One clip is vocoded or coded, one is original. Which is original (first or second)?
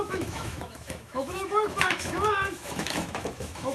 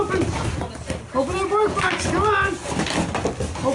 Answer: second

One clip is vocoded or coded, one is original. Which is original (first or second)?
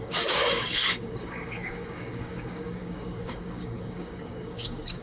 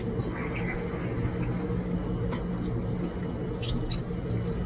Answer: second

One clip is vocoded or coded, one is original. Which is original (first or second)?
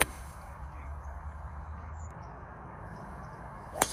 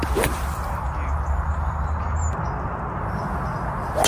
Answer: second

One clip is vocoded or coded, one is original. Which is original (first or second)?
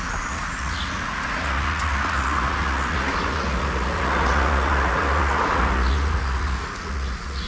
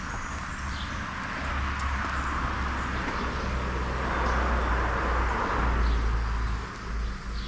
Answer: second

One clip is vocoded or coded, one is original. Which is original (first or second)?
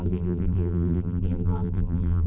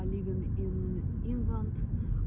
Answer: second